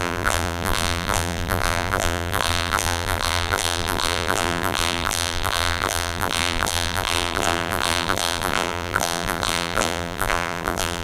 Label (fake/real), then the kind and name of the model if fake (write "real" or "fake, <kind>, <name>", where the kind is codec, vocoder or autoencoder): fake, vocoder, BigVGAN v2